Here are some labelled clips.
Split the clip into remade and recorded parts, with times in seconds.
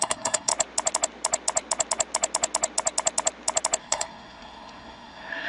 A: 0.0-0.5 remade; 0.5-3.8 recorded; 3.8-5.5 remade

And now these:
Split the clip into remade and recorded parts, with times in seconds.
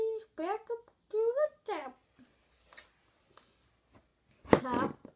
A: 0.0-5.2 recorded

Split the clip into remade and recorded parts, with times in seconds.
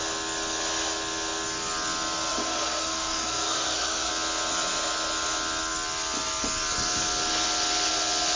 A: 0.0-2.3 recorded; 2.3-4.1 remade; 4.1-8.4 recorded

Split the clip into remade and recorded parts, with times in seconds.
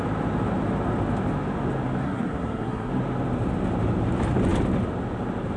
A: 0.0-2.0 recorded; 2.0-2.9 remade; 2.9-5.6 recorded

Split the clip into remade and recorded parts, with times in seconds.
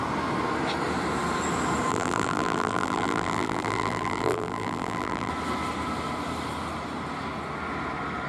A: 0.0-1.9 recorded; 1.9-5.3 remade; 5.3-8.3 recorded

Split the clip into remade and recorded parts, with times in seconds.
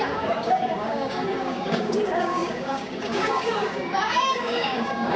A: 0.0-5.2 remade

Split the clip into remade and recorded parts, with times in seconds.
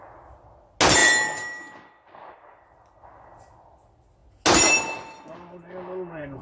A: 0.0-6.4 recorded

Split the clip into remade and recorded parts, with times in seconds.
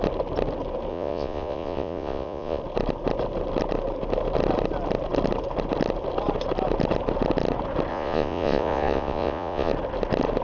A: 0.0-0.9 recorded; 0.9-2.6 remade; 2.6-7.9 recorded; 7.9-9.7 remade; 9.7-10.4 recorded